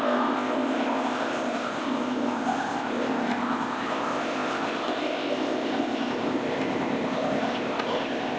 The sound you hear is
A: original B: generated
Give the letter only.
B